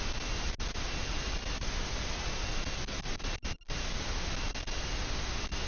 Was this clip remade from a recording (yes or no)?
no